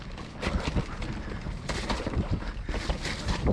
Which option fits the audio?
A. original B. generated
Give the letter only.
A